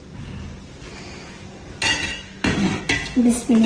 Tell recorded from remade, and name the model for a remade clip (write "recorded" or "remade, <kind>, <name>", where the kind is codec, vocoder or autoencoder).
recorded